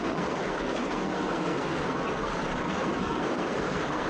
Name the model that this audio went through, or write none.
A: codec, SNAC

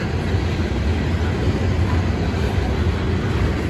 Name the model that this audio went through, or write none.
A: none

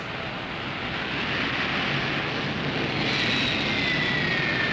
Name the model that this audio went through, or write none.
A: none